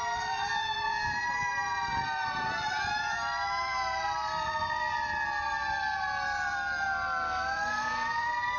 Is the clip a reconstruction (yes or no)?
yes